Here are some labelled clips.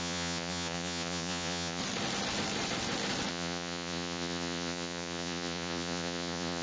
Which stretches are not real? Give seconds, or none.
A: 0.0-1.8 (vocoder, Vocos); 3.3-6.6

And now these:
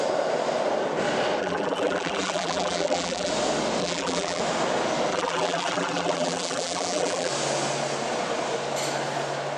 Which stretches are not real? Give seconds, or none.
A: 1.4-3.3 (vocoder, BigVGAN v2); 3.8-4.4; 5.1-7.3

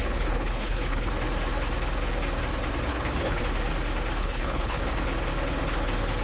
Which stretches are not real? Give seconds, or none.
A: 0.0-1.1 (codec, HILCodec); 2.9-3.4; 4.2-4.8

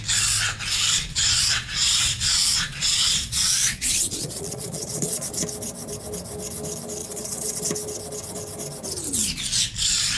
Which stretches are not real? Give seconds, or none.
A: 1.1-5.3 (vocoder, Vocos); 7.0-7.6